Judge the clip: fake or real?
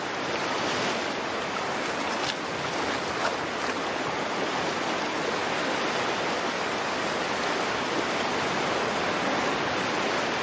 real